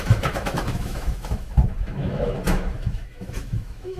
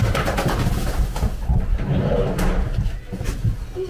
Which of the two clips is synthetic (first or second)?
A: first